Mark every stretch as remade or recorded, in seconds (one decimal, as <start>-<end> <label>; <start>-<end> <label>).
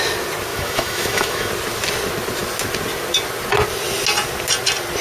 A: 0.0-0.5 recorded; 0.5-1.5 remade; 1.5-5.0 recorded